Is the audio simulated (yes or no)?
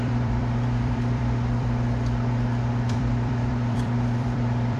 yes